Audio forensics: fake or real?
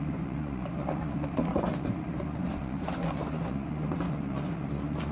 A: fake